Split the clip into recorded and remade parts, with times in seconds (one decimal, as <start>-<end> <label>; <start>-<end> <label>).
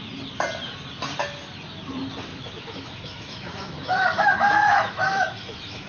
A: 0.0-2.3 recorded; 2.3-5.9 remade